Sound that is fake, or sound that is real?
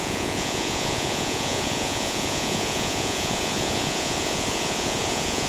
fake